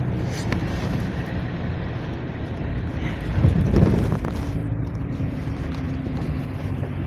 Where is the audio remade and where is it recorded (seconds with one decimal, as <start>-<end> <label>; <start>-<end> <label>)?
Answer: 0.0-0.6 recorded; 0.6-1.3 remade; 1.3-4.6 recorded; 4.6-5.6 remade; 5.6-7.1 recorded